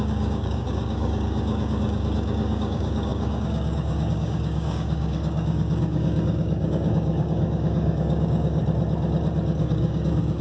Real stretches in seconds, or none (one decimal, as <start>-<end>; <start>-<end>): 8.6-9.6